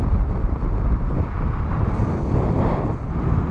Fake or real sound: real